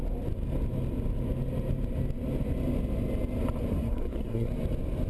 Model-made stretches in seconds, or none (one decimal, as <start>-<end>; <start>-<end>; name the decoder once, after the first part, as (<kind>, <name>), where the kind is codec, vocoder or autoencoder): 3.7-4.5 (codec, SNAC)